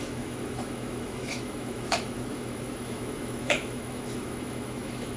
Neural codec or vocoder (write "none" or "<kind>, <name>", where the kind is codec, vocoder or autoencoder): autoencoder, DAC-VAE